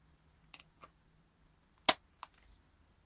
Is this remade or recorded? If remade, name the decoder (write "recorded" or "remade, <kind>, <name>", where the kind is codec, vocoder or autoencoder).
recorded